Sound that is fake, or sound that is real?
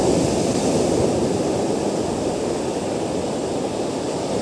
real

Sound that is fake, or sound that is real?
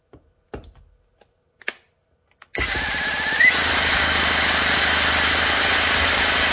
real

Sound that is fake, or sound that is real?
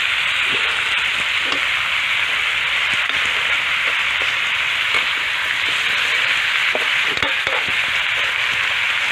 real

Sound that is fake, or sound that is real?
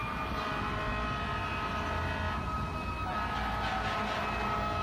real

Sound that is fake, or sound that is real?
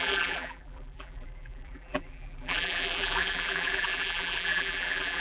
fake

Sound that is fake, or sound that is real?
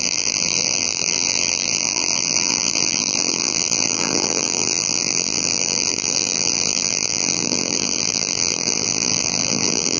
fake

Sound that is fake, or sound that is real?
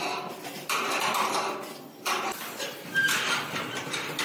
fake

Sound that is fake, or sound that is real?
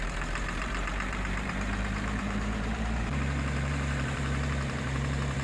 fake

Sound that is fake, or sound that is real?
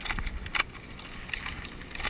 real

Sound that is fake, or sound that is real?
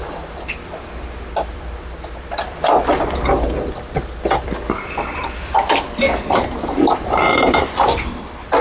fake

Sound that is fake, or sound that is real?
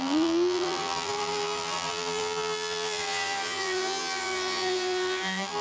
fake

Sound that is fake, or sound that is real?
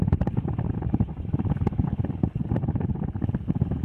real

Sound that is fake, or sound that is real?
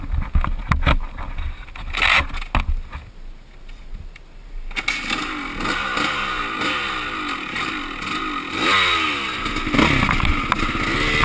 real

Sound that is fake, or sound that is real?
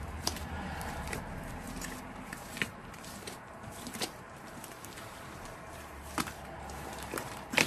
fake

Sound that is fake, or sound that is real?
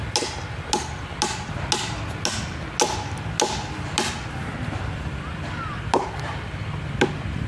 real